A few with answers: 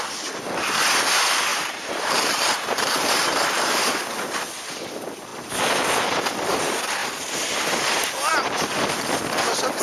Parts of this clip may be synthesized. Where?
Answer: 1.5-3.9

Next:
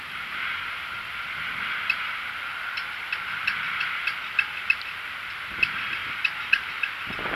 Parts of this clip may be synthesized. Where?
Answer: 6.0-6.7

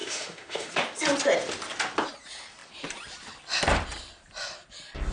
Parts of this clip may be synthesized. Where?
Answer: 0.0-0.7

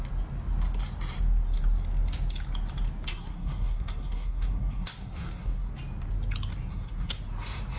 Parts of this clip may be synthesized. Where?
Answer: 3.1-5.7; 6.7-7.2

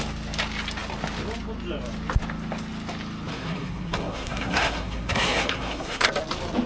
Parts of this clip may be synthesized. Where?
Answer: 3.3-6.1

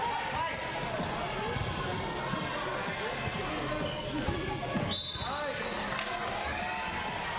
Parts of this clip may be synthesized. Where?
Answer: none